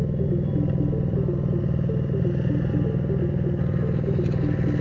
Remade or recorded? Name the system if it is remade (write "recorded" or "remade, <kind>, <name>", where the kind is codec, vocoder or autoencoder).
recorded